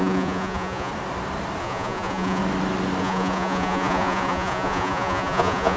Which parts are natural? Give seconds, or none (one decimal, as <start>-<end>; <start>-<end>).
0.9-1.6; 2.4-3.0